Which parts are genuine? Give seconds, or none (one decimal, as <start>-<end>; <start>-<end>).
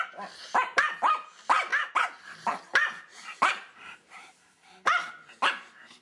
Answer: 0.0-1.7; 5.3-6.0